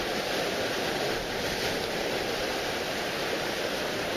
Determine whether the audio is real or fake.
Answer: real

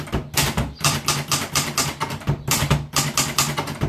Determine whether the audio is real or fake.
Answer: real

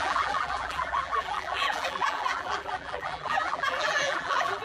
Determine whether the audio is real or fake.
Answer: fake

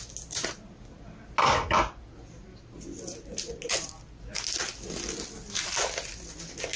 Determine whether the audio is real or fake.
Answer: real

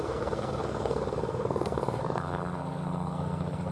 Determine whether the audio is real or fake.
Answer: fake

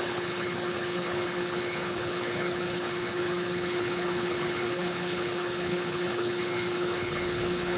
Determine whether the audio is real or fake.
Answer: fake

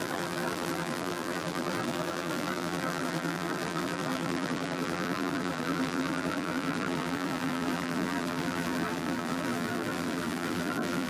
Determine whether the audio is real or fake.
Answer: fake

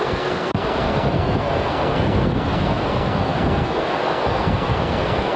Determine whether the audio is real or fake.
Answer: fake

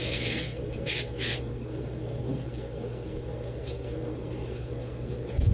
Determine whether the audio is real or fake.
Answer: fake